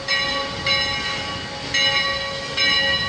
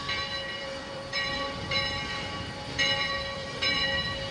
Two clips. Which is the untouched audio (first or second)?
first